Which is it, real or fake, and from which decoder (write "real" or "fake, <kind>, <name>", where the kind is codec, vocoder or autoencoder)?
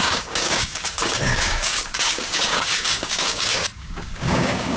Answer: fake, codec, DAC